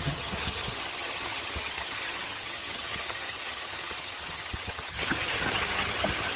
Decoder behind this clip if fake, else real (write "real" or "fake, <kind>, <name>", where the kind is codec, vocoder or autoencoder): fake, vocoder, HiFi-GAN